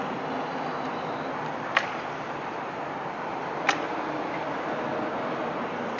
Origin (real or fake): real